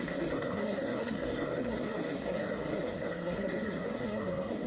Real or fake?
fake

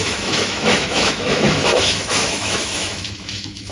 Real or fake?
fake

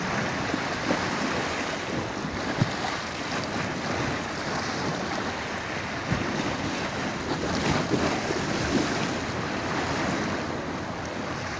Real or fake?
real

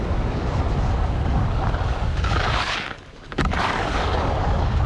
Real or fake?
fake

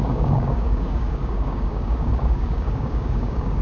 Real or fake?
fake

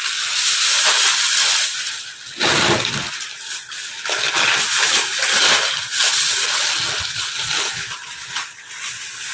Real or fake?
real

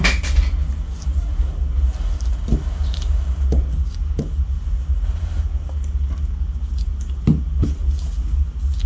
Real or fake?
real